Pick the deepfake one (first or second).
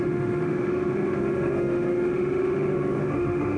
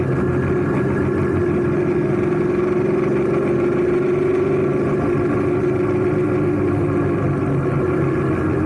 first